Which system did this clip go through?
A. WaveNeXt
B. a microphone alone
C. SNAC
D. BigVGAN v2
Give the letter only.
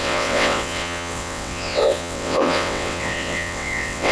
A